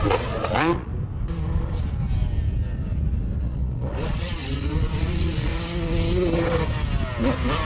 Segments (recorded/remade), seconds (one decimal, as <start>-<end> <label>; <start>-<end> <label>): 0.0-0.9 remade; 0.9-3.4 recorded; 3.4-5.5 remade; 5.5-7.7 recorded